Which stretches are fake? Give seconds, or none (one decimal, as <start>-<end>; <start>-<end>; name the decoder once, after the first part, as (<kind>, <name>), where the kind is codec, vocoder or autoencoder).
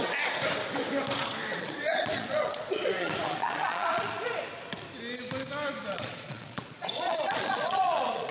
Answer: 1.5-4.4 (vocoder, Vocos); 5.9-8.3